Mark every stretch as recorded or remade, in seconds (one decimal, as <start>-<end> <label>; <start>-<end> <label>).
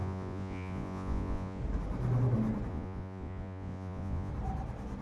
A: 0.0-1.6 remade; 1.6-2.7 recorded; 2.7-4.3 remade; 4.3-5.0 recorded